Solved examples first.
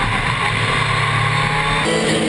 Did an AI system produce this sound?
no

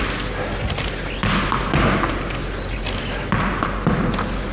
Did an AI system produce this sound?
no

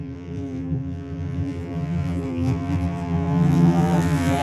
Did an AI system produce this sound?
yes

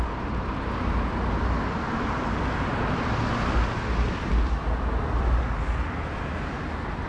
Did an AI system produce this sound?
no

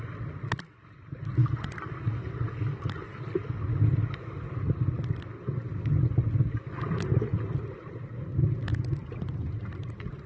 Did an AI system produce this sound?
no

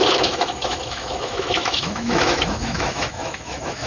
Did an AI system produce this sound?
yes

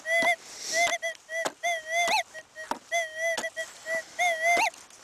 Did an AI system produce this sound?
no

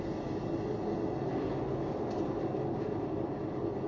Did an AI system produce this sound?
no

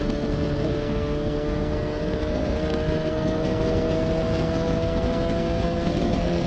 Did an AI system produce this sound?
yes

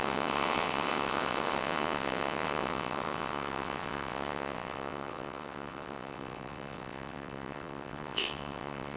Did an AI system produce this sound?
yes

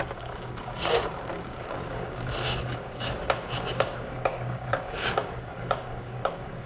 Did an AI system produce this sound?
yes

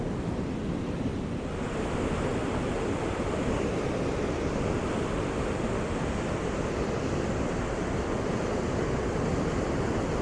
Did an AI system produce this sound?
no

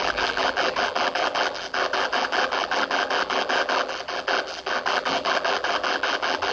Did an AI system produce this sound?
yes